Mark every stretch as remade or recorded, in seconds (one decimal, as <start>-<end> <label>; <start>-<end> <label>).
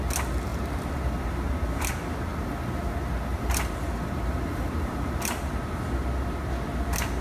0.0-0.5 recorded; 0.5-1.9 remade; 1.9-3.3 recorded; 3.3-5.6 remade; 5.6-7.2 recorded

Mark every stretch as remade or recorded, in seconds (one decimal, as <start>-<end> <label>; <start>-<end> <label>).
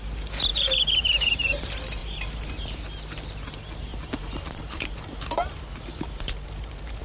0.0-0.5 recorded; 0.5-1.6 remade; 1.6-2.0 recorded; 2.0-2.8 remade; 2.8-3.9 recorded; 3.9-7.0 remade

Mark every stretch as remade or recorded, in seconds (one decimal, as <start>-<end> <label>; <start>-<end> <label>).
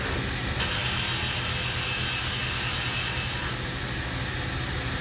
0.0-5.0 recorded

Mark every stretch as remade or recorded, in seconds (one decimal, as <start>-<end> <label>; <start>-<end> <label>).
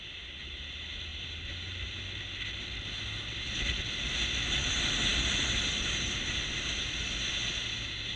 0.0-1.1 recorded; 1.1-2.0 remade; 2.0-8.2 recorded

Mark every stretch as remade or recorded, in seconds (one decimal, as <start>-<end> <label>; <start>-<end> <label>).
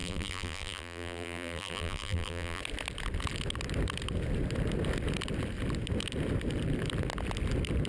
0.0-2.6 remade; 2.6-7.9 recorded